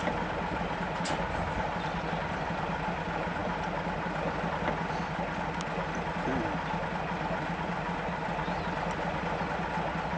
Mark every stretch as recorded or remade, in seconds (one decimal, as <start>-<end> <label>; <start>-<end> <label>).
0.0-10.2 recorded